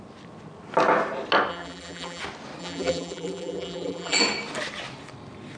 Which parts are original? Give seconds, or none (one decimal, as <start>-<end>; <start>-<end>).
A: 0.0-1.5; 2.2-2.6; 4.2-5.6